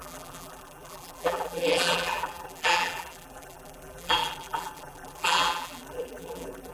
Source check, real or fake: fake